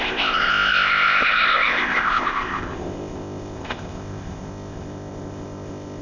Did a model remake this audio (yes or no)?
yes